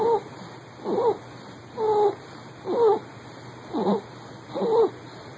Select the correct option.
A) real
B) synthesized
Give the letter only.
A